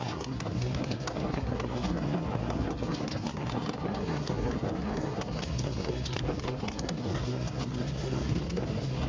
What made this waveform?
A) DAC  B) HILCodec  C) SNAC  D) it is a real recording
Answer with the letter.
C